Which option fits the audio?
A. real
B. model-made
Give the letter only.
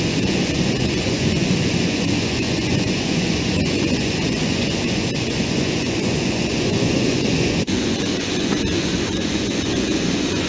B